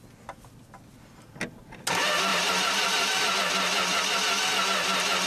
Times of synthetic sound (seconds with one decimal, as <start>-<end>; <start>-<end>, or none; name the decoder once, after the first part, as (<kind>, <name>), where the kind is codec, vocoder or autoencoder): 2.3-3.4 (vocoder, BigVGAN v2)